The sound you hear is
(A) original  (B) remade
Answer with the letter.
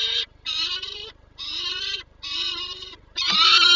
B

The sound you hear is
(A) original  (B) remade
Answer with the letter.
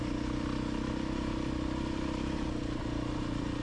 A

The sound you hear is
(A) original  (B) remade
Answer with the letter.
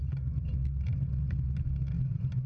A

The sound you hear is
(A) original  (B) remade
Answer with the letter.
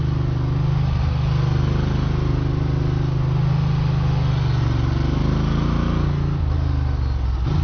A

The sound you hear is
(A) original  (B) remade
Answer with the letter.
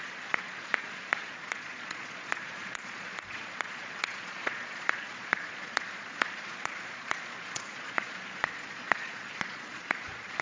B